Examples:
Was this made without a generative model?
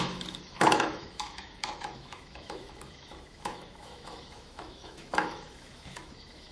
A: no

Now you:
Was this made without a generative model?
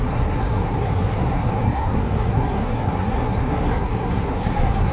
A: no